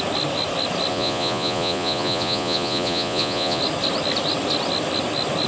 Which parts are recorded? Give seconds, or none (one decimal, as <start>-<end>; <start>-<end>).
0.0-0.9; 3.6-5.5